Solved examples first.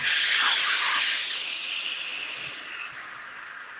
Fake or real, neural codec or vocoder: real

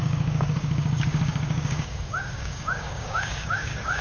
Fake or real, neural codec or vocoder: fake, codec, DAC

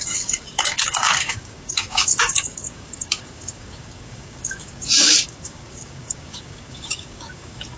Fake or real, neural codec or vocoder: fake, codec, DAC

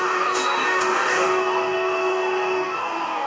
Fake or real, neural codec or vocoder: fake, codec, DAC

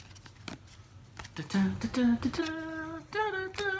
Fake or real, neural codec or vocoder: real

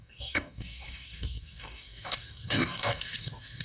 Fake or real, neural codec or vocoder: fake, codec, DAC